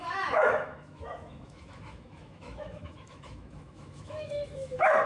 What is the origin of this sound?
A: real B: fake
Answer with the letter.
B